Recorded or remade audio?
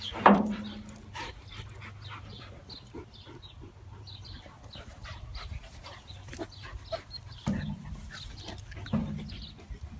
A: recorded